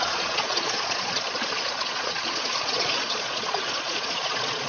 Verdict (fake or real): fake